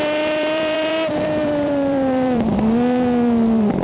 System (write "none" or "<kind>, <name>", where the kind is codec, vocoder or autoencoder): vocoder, BigVGAN v2